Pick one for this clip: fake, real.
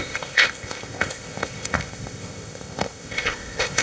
fake